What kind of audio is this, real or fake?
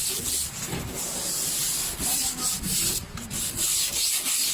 real